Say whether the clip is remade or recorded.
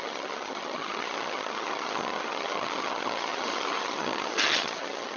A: remade